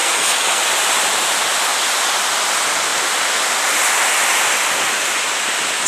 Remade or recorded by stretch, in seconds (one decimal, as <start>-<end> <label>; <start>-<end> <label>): 0.0-0.6 remade; 0.6-5.9 recorded